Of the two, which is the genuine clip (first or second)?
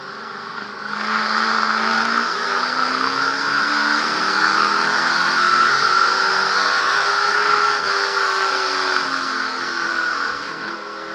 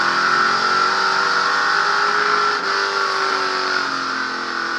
second